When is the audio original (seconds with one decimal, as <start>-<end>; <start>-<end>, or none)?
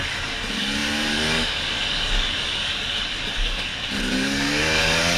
none